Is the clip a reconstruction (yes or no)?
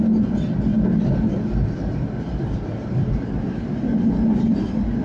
no